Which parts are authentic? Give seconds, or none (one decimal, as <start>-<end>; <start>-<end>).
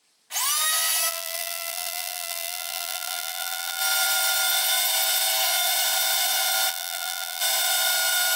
0.0-1.1; 3.8-6.7; 7.4-8.4